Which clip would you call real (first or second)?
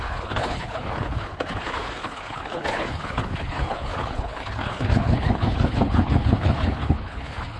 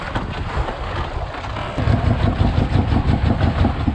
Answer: second